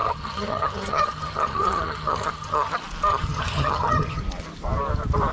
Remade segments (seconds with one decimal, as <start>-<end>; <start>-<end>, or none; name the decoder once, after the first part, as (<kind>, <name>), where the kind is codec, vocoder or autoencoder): 0.0-2.7 (vocoder, HiFi-GAN); 3.1-4.2